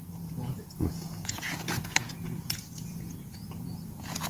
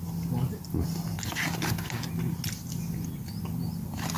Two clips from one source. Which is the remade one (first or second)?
first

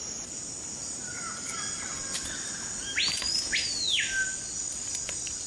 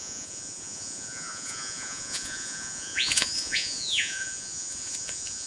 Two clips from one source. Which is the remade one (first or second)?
second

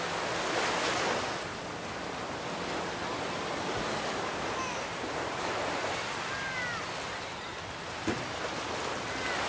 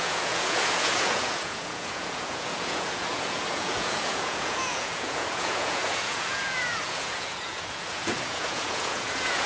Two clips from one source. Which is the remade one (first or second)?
second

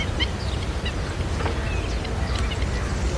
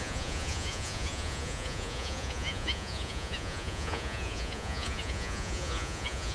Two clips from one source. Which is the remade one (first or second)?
second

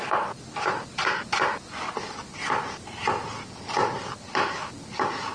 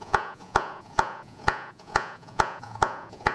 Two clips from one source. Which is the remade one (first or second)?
second